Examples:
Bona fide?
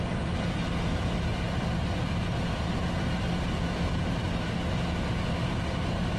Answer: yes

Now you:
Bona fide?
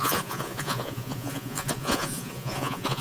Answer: no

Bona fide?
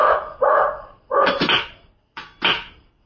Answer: yes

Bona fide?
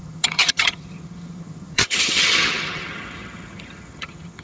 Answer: no